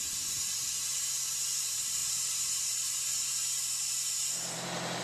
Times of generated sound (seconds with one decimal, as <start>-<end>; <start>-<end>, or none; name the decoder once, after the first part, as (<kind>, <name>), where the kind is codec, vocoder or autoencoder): 0.0-5.0 (vocoder, BigVGAN v2)